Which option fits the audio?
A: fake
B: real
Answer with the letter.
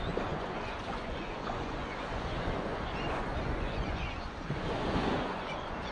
A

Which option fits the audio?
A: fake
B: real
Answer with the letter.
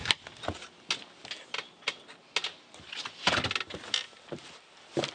B